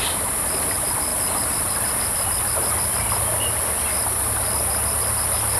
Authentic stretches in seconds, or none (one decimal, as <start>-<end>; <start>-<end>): 0.0-5.6